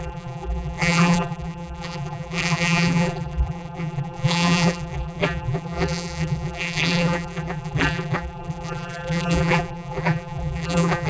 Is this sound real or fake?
fake